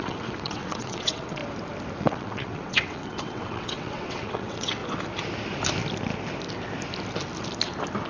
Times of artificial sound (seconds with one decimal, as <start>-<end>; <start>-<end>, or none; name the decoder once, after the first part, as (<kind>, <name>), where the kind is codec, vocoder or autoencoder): 0.0-1.4 (vocoder, WaveNeXt); 2.0-4.8

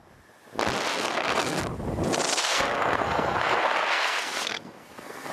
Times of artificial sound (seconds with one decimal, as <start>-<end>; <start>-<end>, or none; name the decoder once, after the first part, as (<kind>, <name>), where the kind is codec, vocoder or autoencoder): 0.9-1.6 (codec, SNAC); 2.3-5.3

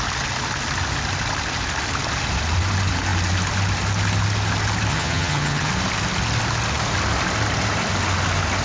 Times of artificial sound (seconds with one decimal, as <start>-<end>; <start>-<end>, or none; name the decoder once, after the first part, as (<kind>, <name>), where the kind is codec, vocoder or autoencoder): 4.9-5.7 (vocoder, HiFi-GAN)

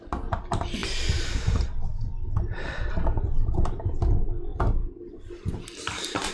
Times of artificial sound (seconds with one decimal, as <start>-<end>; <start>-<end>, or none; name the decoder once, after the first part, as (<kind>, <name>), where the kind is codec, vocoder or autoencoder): none

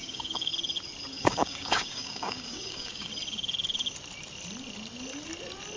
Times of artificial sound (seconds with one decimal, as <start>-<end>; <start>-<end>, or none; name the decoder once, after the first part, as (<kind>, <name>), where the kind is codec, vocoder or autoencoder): 0.0-0.5 (codec, DAC); 1.1-3.1

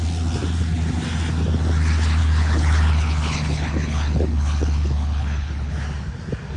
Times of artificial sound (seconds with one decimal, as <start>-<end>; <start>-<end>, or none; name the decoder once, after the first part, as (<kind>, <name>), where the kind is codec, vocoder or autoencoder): 2.2-5.7 (codec, HILCodec)